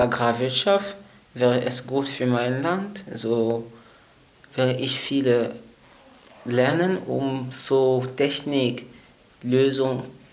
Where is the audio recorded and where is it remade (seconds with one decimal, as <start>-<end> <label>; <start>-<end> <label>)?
0.0-10.3 recorded